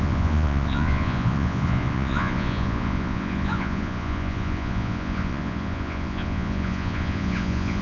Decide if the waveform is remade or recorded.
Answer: remade